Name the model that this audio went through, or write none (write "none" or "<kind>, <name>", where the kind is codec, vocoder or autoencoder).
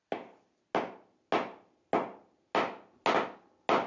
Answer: none